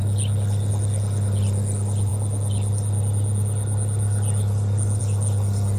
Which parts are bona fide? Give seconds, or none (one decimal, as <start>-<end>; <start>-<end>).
0.0-5.8